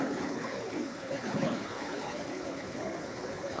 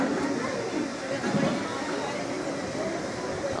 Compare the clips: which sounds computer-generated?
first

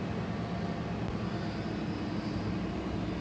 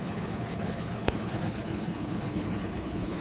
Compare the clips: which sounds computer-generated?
second